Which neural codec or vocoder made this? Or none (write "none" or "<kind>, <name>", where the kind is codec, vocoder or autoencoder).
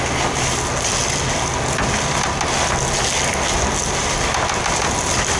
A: none